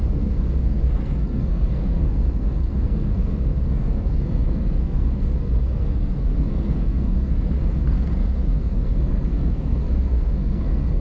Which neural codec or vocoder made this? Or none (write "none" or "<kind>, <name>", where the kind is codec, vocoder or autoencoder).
codec, SNAC